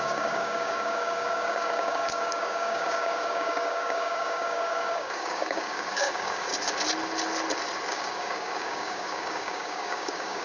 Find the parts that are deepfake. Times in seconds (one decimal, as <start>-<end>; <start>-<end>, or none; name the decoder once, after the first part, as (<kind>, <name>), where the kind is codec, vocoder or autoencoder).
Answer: 0.0-6.5 (codec, DAC); 7.9-10.4